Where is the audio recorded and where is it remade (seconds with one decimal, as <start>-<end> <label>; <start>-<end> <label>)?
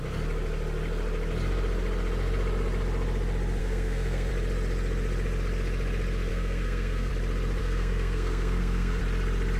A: 0.0-3.6 recorded; 3.6-4.3 remade; 4.3-6.3 recorded; 6.3-7.1 remade; 7.1-7.6 recorded; 7.6-9.0 remade; 9.0-9.6 recorded